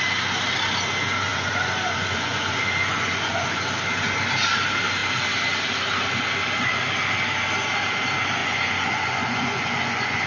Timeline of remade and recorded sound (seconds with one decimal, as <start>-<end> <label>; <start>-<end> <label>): 0.0-1.3 recorded; 1.3-3.7 remade; 3.7-8.4 recorded; 8.4-10.3 remade

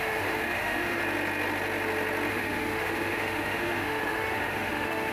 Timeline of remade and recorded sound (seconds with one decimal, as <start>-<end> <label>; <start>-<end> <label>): 0.0-1.0 remade; 1.0-2.3 recorded; 2.3-5.1 remade

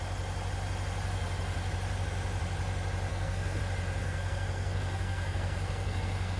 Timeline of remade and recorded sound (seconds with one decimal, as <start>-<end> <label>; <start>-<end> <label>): 0.0-3.1 recorded; 3.1-3.6 remade; 3.6-4.0 recorded; 4.0-6.4 remade

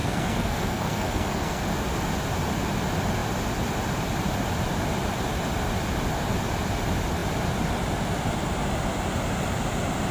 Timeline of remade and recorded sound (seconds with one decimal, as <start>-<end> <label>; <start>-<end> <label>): 0.0-1.6 remade; 1.6-10.1 recorded

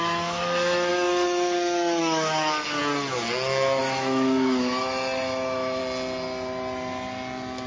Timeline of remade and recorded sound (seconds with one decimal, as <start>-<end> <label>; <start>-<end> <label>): 0.0-2.8 remade; 2.8-3.8 recorded; 3.8-5.8 remade; 5.8-7.7 recorded